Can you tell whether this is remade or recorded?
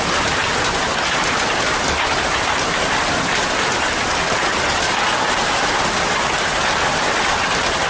recorded